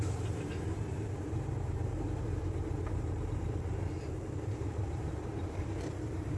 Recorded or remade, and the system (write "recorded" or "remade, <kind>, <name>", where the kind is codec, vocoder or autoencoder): remade, vocoder, BigVGAN v2